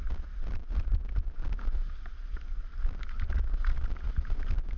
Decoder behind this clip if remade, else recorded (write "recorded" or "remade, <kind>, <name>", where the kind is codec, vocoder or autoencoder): recorded